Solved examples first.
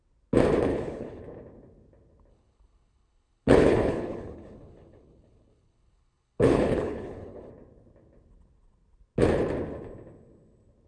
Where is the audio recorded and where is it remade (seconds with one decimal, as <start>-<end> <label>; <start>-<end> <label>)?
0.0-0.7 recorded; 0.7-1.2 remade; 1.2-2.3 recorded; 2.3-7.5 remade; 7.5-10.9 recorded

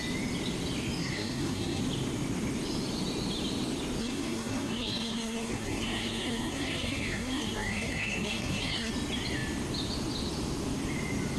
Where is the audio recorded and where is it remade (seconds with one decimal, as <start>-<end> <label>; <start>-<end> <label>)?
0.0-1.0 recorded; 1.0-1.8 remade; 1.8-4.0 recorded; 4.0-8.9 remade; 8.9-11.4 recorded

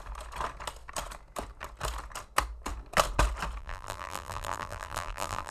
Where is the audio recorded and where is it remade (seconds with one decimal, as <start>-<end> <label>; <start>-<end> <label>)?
0.0-3.6 recorded; 3.6-5.5 remade

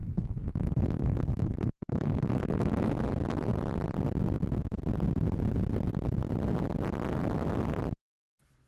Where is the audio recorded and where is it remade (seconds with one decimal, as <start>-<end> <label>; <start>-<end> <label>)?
0.0-2.9 remade; 2.9-8.7 recorded

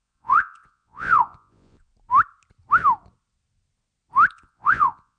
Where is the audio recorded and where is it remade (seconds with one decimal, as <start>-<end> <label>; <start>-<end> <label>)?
0.0-1.9 remade; 1.9-4.3 recorded; 4.3-5.2 remade

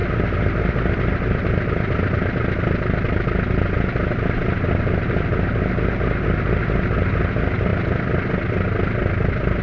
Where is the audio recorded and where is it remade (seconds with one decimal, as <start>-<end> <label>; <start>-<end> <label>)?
0.0-9.6 recorded

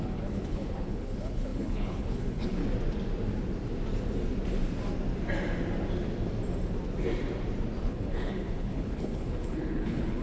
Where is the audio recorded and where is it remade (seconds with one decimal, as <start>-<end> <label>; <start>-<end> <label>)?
0.0-2.6 remade; 2.6-7.8 recorded; 7.8-10.2 remade